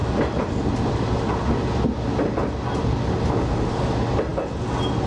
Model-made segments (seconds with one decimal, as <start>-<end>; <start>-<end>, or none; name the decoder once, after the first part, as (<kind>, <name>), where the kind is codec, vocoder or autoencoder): none